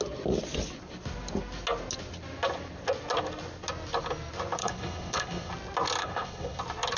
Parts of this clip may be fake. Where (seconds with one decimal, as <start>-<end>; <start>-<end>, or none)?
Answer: 4.6-5.5; 6.0-6.6